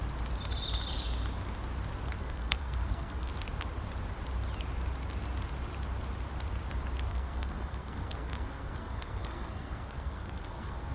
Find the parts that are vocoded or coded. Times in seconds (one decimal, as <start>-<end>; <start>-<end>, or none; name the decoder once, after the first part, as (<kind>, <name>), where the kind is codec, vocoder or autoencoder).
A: 2.2-3.3 (codec, SNAC); 7.1-10.9